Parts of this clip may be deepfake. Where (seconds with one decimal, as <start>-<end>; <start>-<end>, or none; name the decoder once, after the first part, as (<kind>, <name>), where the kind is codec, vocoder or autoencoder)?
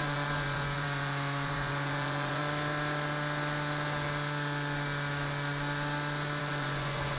0.0-2.4 (vocoder, Vocos); 6.4-7.2